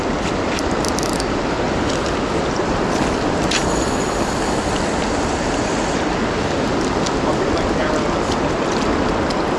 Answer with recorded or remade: recorded